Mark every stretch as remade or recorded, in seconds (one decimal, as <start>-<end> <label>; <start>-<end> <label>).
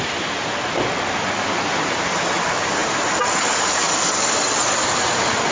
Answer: 0.0-5.5 recorded